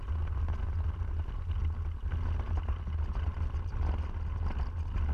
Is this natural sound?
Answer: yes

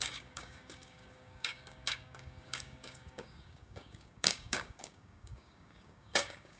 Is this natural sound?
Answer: no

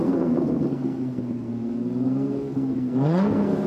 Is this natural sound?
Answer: no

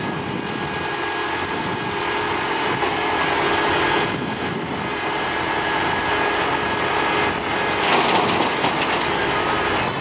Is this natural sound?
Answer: yes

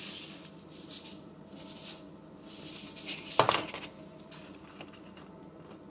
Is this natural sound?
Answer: yes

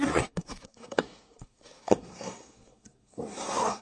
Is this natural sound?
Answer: no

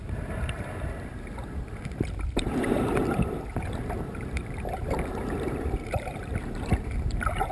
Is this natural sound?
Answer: no